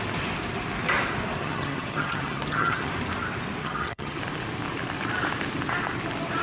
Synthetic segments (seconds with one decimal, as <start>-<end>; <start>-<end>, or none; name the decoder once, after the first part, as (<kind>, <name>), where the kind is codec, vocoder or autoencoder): 1.4-2.9 (vocoder, HiFi-GAN); 3.6-4.2